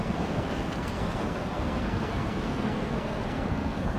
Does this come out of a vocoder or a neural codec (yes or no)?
yes